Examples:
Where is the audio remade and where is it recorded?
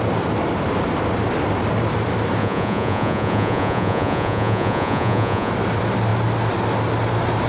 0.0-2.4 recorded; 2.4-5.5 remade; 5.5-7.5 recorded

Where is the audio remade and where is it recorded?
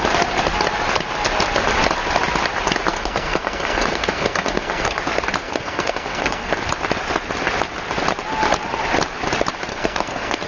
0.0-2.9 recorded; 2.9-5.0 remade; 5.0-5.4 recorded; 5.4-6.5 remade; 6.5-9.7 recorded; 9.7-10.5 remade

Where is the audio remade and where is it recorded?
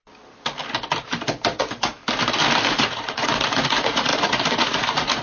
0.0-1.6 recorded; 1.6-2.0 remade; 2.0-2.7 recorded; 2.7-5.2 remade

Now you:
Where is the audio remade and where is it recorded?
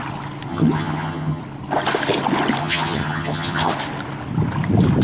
0.0-0.5 recorded; 0.5-1.4 remade; 1.4-2.6 recorded; 2.6-3.7 remade; 3.7-5.0 recorded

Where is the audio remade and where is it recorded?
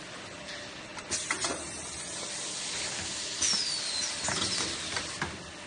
0.0-5.7 recorded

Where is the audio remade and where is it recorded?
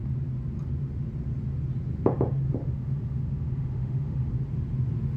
0.0-2.6 recorded; 2.6-4.3 remade; 4.3-5.2 recorded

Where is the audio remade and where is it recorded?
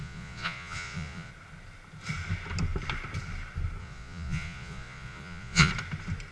0.0-1.3 remade; 1.3-3.8 recorded; 3.8-5.7 remade; 5.7-6.3 recorded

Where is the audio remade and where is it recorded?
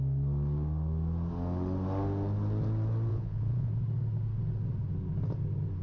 0.0-3.1 recorded; 3.1-3.7 remade; 3.7-5.8 recorded